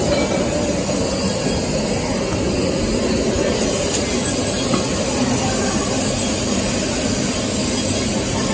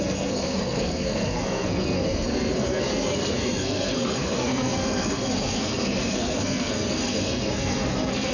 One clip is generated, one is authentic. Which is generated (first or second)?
second